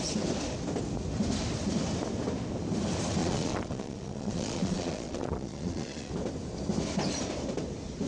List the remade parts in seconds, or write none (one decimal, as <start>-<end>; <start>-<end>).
3.2-6.1